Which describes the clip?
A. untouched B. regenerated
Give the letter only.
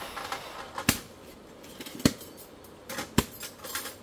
A